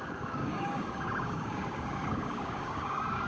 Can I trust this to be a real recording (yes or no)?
no